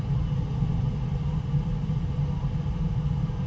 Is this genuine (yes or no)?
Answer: yes